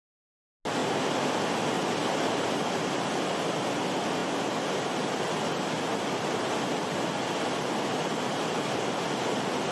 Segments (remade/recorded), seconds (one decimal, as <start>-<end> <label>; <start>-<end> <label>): 0.0-0.8 recorded; 0.8-1.6 remade; 1.6-9.7 recorded